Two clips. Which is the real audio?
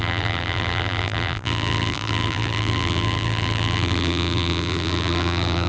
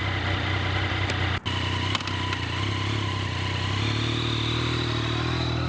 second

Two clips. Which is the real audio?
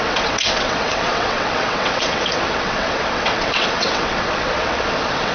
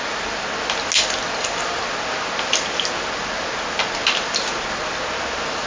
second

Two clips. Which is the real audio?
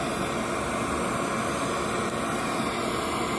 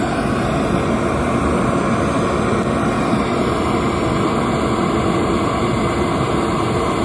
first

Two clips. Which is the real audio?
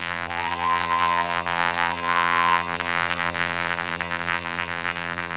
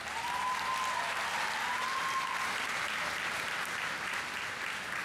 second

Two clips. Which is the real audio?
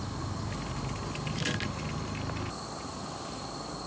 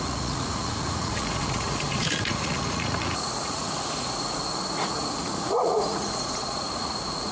first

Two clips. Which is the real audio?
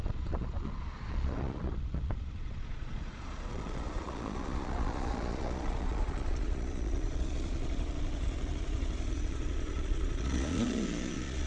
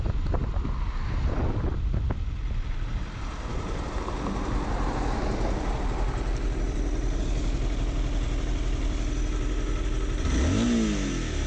second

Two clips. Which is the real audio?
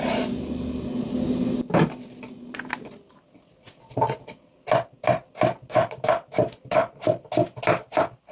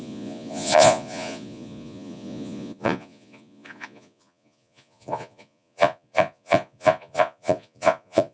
first